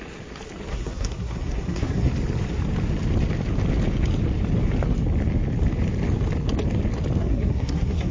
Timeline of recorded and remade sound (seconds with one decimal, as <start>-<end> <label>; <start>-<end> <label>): 0.0-0.7 recorded; 0.7-2.1 remade; 2.1-7.2 recorded; 7.2-8.1 remade